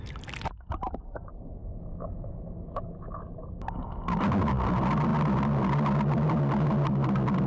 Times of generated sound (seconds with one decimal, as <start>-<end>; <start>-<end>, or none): 1.6-3.2